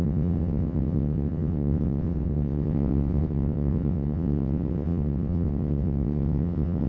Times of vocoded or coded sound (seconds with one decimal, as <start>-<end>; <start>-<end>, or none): 0.0-6.9